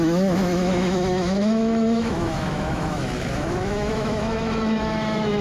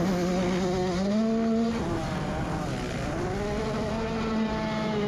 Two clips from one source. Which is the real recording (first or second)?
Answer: second